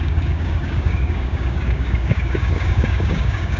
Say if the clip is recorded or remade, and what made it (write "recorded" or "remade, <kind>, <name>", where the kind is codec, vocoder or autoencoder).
remade, codec, DAC